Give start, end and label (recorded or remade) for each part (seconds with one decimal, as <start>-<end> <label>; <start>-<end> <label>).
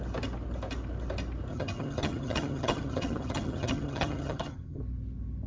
0.0-1.5 recorded; 1.5-4.8 remade; 4.8-5.5 recorded